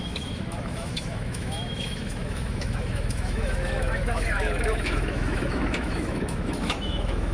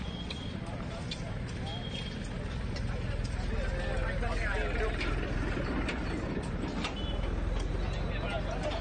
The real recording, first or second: second